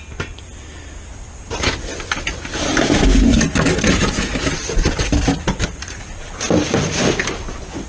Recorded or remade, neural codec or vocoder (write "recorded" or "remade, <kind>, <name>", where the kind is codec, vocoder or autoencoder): recorded